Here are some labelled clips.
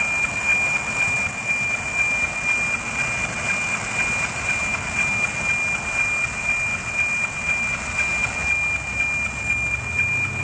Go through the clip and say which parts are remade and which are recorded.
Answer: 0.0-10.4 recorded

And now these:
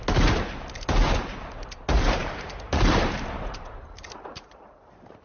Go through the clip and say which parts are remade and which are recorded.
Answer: 0.0-2.2 recorded; 2.2-5.2 remade

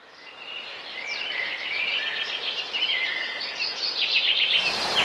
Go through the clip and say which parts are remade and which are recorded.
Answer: 0.0-5.0 recorded

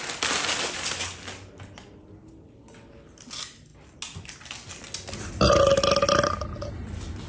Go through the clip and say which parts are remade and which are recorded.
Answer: 0.0-7.3 recorded

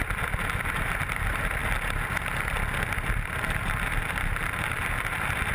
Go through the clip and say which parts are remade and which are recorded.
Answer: 0.0-1.6 remade; 1.6-3.1 recorded; 3.1-5.5 remade